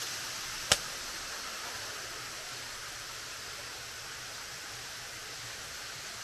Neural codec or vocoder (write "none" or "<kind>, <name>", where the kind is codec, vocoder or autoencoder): none